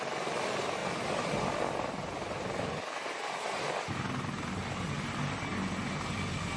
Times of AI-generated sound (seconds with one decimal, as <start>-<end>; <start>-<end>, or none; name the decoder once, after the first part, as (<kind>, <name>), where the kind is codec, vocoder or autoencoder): none